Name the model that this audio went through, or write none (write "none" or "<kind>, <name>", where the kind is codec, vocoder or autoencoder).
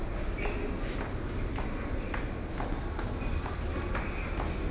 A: none